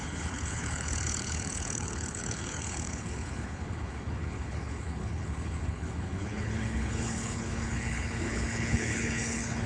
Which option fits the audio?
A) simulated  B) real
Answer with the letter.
A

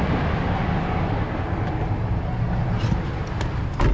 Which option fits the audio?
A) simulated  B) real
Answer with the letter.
B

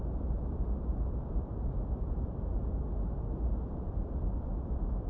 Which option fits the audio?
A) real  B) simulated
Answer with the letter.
A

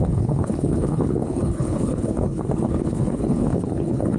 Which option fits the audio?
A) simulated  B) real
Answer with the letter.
A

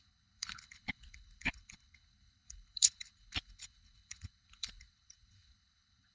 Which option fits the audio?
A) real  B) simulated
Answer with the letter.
B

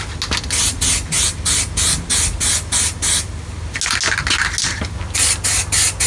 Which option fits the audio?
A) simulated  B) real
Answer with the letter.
B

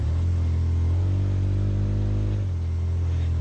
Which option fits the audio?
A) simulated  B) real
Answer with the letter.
B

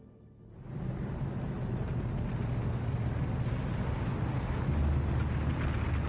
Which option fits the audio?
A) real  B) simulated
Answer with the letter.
A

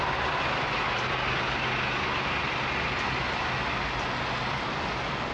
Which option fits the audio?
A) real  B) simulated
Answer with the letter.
A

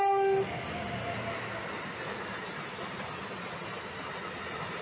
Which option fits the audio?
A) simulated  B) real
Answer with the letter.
B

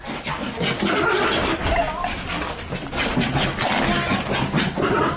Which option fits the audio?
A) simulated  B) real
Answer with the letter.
B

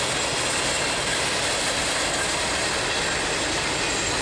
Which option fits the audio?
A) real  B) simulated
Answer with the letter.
A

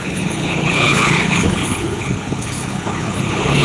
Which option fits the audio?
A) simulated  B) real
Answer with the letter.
A